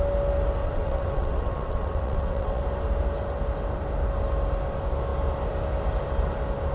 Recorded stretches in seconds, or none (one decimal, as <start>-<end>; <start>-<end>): 0.0-0.6; 2.6-6.7